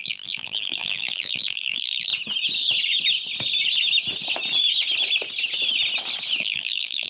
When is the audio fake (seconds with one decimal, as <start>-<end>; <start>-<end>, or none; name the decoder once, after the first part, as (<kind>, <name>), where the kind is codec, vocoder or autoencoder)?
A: 0.0-2.1 (vocoder, BigVGAN v2); 6.4-7.1